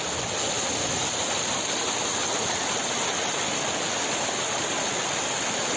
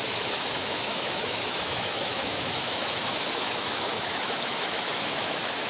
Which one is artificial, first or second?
second